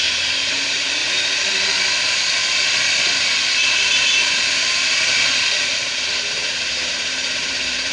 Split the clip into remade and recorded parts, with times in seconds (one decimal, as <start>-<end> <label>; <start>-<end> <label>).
0.0-1.0 remade; 1.0-5.7 recorded; 5.7-7.9 remade